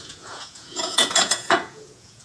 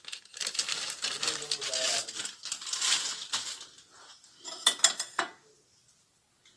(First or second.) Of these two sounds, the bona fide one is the second